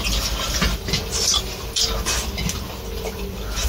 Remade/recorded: recorded